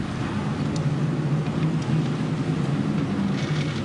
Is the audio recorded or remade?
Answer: recorded